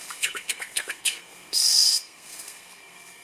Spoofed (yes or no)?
yes